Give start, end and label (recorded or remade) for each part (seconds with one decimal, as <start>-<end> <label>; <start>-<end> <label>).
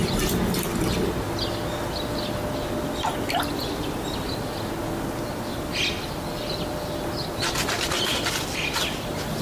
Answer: 0.0-9.4 recorded